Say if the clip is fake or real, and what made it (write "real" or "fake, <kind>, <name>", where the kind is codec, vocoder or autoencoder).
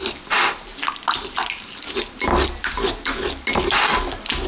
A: real